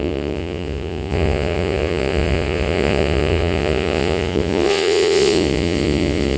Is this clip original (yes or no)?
no